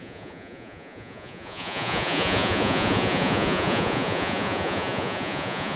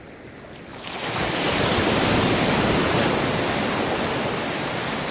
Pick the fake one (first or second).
first